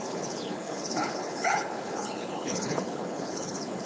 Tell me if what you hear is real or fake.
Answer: fake